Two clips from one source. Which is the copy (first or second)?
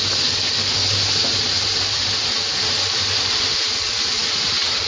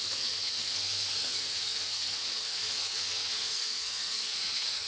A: second